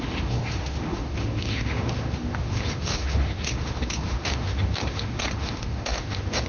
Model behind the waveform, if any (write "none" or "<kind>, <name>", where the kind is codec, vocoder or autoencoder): autoencoder, DAC-VAE